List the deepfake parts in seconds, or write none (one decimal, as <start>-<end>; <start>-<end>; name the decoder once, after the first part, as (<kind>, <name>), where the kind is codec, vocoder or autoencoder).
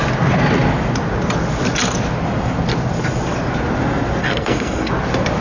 4.2-4.9 (codec, SNAC)